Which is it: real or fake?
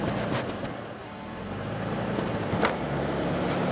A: real